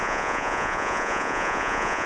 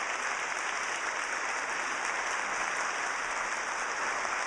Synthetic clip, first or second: first